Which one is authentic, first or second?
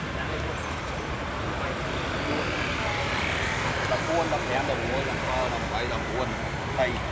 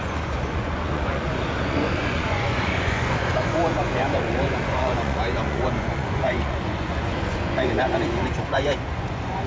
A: first